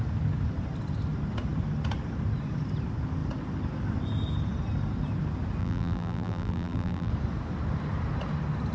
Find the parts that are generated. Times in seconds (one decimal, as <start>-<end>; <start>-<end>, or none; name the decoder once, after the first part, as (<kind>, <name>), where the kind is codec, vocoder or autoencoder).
5.6-7.1 (vocoder, BigVGAN v2)